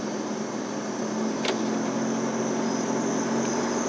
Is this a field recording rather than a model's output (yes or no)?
yes